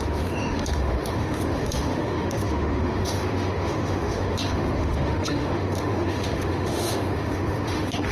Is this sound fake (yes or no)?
yes